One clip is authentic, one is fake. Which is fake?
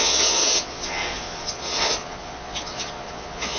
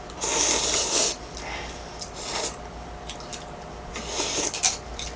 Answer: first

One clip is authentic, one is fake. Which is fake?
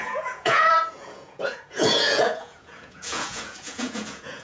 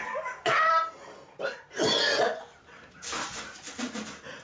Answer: first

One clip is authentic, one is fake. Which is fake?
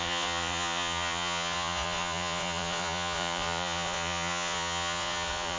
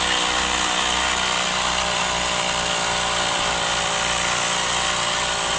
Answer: first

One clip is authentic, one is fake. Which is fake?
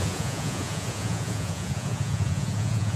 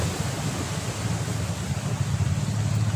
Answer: first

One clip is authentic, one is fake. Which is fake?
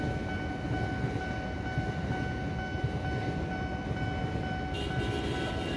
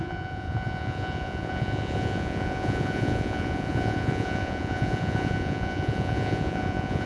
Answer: second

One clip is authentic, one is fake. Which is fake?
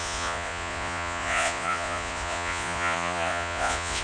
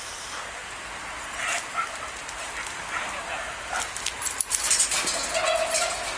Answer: first